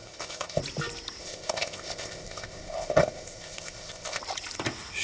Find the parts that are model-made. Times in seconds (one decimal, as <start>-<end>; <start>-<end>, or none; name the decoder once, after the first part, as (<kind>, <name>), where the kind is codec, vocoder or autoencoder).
0.0-0.6 (codec, ZipCodec); 1.2-4.2